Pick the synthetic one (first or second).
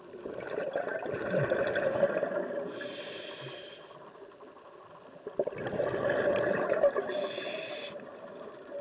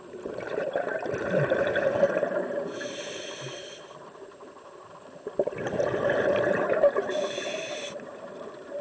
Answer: second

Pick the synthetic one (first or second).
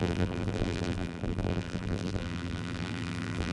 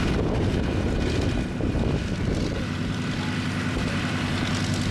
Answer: first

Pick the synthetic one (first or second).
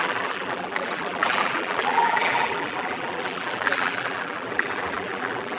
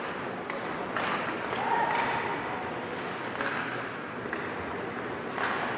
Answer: first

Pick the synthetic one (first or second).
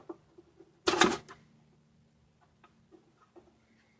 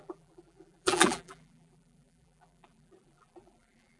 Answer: second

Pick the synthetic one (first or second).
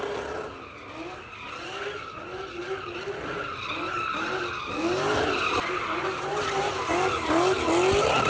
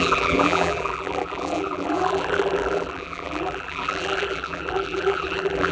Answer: second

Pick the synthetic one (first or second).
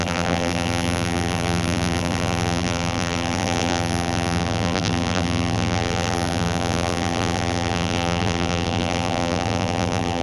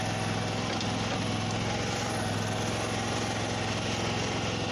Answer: first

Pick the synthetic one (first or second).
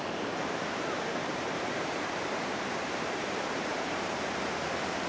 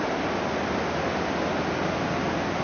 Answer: first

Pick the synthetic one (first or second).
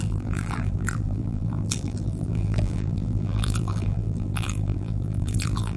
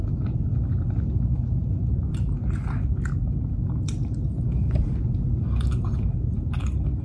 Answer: first